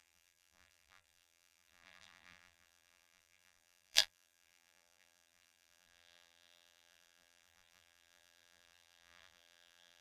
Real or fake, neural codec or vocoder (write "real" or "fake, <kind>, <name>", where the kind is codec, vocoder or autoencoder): fake, vocoder, BigVGAN v2